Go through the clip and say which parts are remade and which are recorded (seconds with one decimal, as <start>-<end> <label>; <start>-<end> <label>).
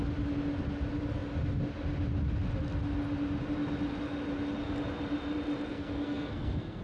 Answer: 0.0-5.7 recorded; 5.7-6.8 remade